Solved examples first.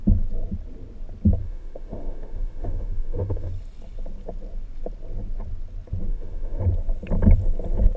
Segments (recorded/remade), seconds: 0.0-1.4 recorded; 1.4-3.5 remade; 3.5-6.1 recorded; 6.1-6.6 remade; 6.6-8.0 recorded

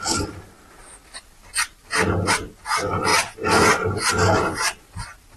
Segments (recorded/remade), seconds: 0.0-5.4 recorded

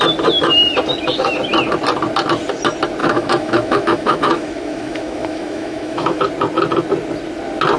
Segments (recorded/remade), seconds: 0.0-3.0 recorded; 3.0-6.2 remade; 6.2-7.8 recorded

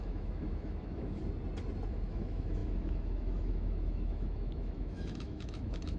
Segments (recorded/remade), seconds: 0.0-1.2 remade; 1.2-1.9 recorded; 1.9-6.0 remade

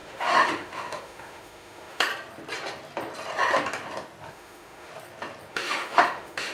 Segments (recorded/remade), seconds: 0.0-2.1 remade; 2.1-4.3 recorded; 4.3-4.9 remade; 4.9-5.5 recorded; 5.5-6.5 remade

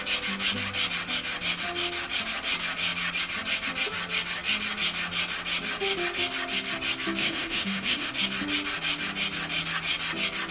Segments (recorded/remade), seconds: 0.0-7.2 recorded; 7.2-8.1 remade; 8.1-10.5 recorded

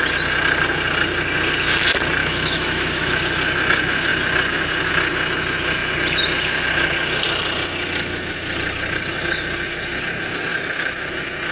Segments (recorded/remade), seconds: 0.0-2.2 recorded; 2.2-3.1 remade; 3.1-11.5 recorded

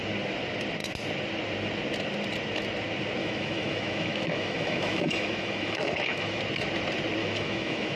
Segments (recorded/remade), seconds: 0.0-3.2 recorded; 3.2-6.4 remade; 6.4-7.2 recorded; 7.2-8.0 remade